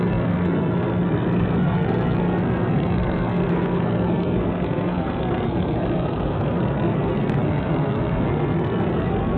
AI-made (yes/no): yes